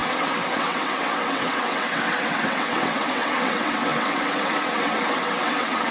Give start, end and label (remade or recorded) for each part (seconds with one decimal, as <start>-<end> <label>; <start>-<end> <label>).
0.0-5.9 remade